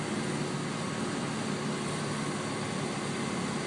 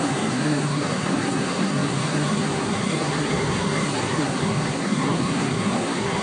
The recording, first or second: first